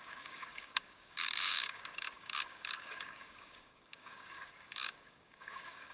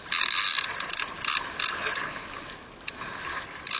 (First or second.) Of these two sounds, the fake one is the first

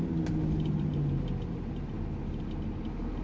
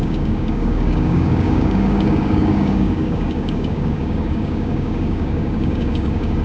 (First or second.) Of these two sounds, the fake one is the second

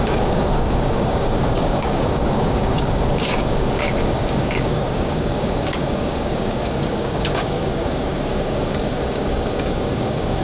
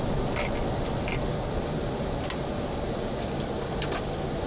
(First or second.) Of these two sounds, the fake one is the first